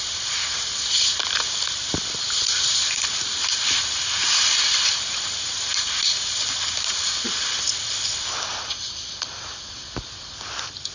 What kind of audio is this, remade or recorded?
remade